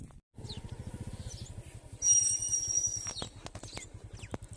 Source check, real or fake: real